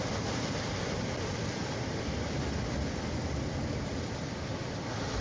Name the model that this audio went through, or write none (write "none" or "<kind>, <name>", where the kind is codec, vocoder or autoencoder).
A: none